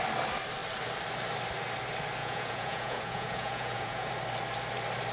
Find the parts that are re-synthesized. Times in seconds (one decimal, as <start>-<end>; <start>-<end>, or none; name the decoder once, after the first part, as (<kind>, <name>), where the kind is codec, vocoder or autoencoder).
2.2-4.1 (vocoder, Vocos)